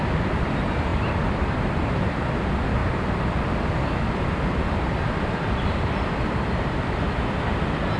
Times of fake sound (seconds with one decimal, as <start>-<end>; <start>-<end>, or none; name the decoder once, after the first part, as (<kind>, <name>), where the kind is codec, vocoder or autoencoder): 0.9-2.2 (vocoder, BigVGAN v2); 2.8-7.1